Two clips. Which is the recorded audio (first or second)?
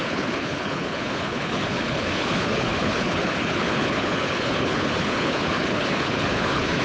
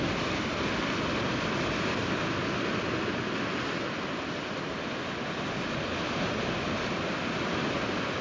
second